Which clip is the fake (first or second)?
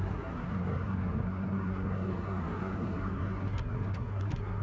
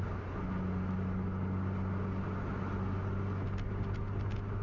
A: first